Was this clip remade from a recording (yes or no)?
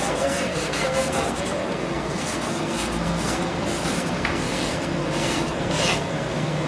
yes